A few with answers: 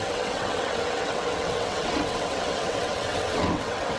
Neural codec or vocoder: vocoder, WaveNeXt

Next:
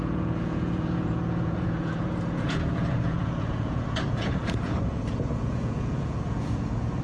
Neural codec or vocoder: vocoder, Vocos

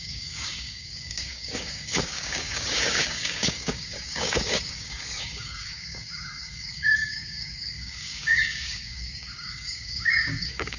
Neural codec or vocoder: codec, DAC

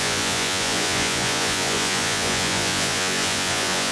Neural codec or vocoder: vocoder, Vocos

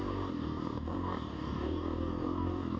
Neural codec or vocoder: codec, DAC